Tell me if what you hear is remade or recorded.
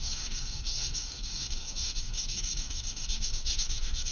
remade